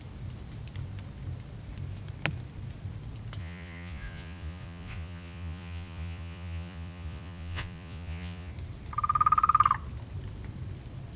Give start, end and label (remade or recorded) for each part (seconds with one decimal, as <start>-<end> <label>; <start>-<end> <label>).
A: 0.0-3.4 recorded; 3.4-8.5 remade; 8.5-11.2 recorded